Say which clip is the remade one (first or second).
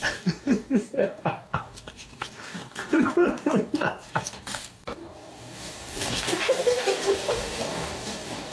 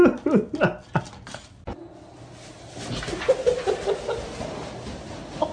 first